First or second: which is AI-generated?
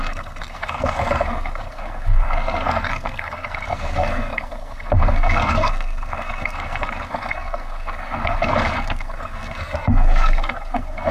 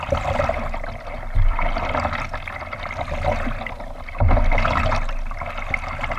first